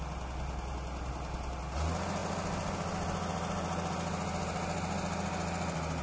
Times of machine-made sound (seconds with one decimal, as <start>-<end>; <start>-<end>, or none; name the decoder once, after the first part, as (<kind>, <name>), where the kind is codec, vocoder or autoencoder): none